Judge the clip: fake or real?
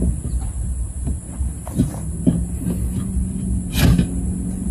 real